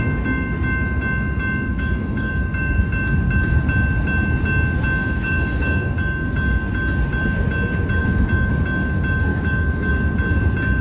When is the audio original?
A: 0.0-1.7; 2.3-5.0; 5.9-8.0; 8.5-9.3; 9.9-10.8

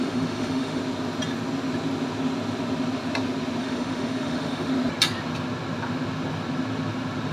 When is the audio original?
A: 0.8-3.6; 4.7-7.3